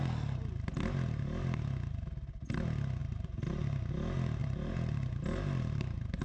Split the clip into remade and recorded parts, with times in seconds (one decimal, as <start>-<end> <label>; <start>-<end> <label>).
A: 0.0-3.0 recorded; 3.0-3.9 remade; 3.9-4.4 recorded; 4.4-6.2 remade